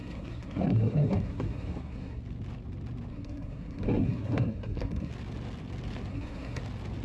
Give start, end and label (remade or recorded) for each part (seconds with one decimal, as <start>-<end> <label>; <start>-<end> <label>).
0.0-2.2 remade; 2.2-3.1 recorded; 3.1-5.1 remade; 5.1-6.1 recorded; 6.1-6.6 remade; 6.6-7.0 recorded